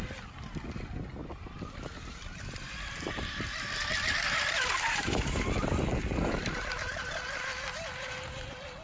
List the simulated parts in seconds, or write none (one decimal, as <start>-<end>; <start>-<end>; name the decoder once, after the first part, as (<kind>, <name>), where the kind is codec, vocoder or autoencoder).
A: 1.2-2.7 (vocoder, BigVGAN v2); 3.1-7.1

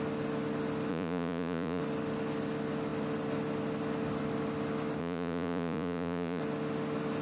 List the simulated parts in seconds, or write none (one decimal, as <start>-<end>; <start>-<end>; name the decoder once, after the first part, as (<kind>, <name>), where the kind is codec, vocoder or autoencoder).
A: 0.9-1.8 (vocoder, Vocos); 5.0-6.4

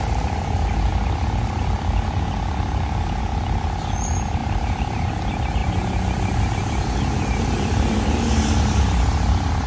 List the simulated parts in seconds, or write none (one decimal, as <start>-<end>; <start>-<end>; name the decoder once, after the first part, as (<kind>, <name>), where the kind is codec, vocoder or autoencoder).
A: 4.4-5.1 (vocoder, BigVGAN v2)

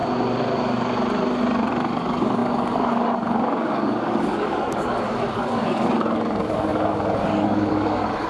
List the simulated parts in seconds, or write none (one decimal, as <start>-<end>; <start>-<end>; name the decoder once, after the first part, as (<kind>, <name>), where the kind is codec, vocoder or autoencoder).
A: 1.7-8.3 (codec, DAC)

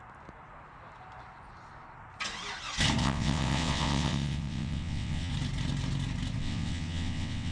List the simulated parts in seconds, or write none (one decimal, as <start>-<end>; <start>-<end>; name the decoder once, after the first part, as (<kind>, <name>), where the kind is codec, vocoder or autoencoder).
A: 3.0-5.3 (vocoder, WaveNeXt); 6.4-7.5

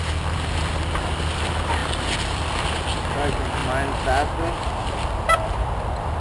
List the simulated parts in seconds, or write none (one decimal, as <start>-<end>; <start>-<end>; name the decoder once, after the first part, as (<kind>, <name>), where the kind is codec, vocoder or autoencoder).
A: none